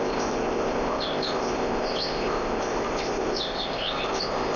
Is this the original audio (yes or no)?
no